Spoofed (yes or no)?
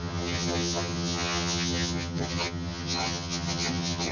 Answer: yes